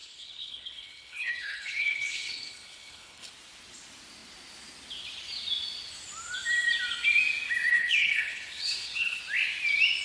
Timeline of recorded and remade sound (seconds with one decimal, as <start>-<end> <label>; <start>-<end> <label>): 0.0-3.3 remade; 3.3-7.7 recorded; 7.7-9.2 remade; 9.2-10.0 recorded

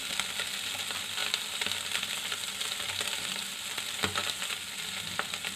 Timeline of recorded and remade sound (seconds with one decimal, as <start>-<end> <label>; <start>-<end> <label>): 0.0-5.6 recorded

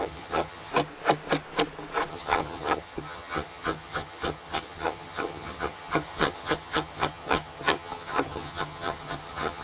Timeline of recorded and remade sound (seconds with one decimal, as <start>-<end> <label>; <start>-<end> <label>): 0.0-0.7 remade; 0.7-2.1 recorded; 2.1-9.6 remade